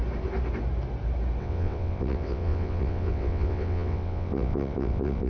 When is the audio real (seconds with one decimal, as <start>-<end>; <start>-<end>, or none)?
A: 0.0-1.4